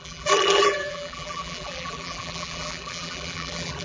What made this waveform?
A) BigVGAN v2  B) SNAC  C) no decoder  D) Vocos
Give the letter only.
A